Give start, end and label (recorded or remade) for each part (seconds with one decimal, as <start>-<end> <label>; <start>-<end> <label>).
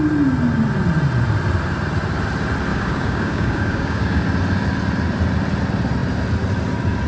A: 0.0-2.7 recorded; 2.7-4.2 remade; 4.2-7.1 recorded